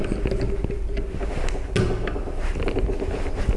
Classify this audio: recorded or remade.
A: recorded